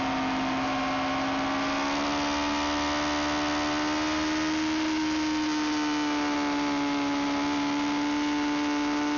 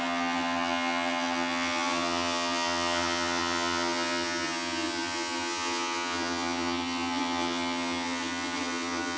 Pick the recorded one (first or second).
first